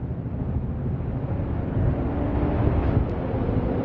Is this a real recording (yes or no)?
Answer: yes